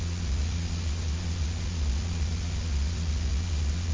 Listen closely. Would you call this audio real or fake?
fake